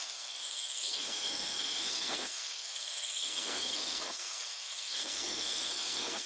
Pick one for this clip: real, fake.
fake